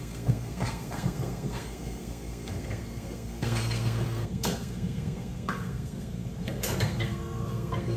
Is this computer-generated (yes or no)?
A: yes